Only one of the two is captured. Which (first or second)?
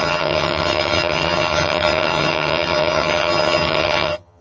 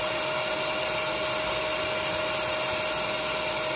second